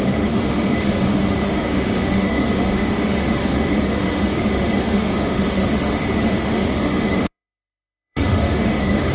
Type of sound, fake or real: fake